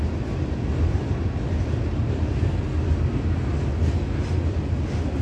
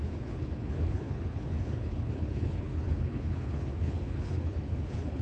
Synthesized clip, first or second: second